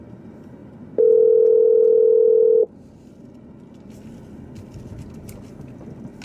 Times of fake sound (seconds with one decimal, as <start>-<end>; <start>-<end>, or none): none